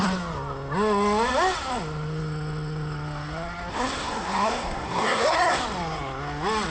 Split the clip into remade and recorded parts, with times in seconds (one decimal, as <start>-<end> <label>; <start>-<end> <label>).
0.0-3.7 recorded; 3.7-5.6 remade; 5.6-6.7 recorded